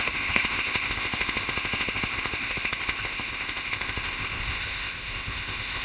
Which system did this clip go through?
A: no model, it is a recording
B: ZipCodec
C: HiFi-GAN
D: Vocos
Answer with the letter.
B